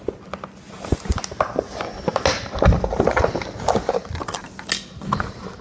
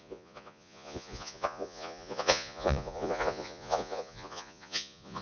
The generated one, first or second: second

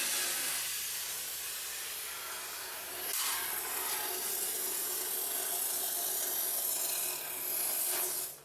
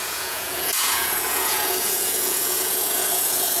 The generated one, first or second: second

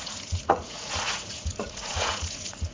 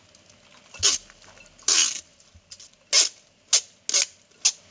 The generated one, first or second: first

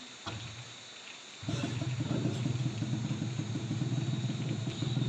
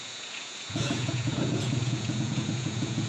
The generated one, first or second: second